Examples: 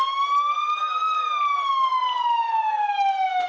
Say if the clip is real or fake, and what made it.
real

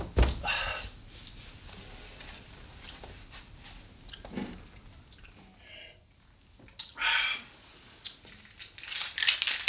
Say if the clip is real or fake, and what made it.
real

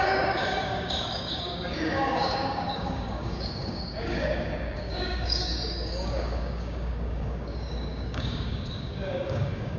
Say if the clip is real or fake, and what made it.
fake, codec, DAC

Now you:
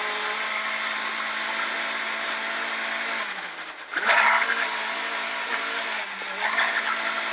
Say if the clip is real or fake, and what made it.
real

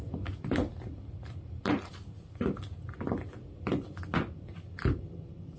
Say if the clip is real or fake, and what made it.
real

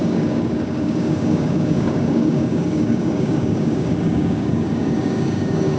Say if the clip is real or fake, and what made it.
fake, codec, DAC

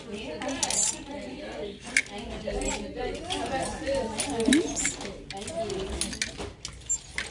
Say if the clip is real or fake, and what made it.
real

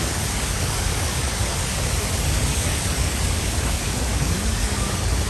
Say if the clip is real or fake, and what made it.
fake, codec, DAC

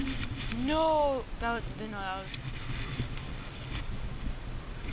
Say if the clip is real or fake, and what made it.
real